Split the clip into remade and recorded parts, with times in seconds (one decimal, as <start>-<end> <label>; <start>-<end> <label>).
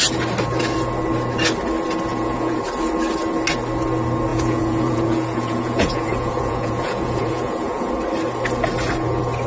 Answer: 0.0-2.1 recorded; 2.1-2.6 remade; 2.6-4.3 recorded; 4.3-7.9 remade; 7.9-9.5 recorded